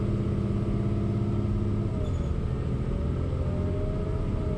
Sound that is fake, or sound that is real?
real